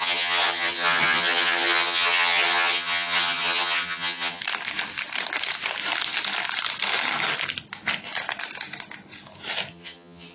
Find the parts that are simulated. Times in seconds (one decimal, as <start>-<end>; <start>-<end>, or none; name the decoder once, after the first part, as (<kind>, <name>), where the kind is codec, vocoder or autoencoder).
0.0-4.4 (vocoder, HiFi-GAN); 9.7-10.3